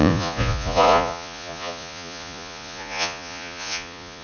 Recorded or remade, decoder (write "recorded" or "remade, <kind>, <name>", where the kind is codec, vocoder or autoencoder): remade, vocoder, Vocos